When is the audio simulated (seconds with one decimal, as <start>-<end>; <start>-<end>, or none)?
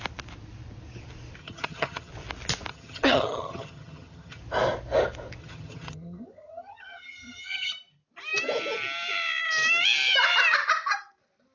1.4-2.1; 2.7-4.4; 5.4-7.7